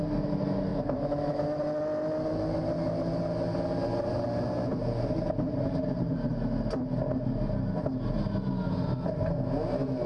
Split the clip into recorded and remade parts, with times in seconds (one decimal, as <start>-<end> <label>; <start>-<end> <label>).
0.0-0.7 recorded; 0.7-1.6 remade; 1.6-10.1 recorded

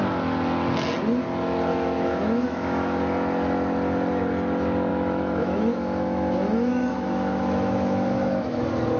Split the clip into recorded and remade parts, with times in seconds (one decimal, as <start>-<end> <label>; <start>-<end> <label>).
0.0-1.7 recorded; 1.7-3.0 remade; 3.0-4.9 recorded; 4.9-8.6 remade; 8.6-9.0 recorded

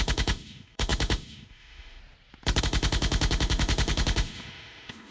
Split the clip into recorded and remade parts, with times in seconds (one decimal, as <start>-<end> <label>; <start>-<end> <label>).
0.0-2.0 remade; 2.0-2.6 recorded; 2.6-5.1 remade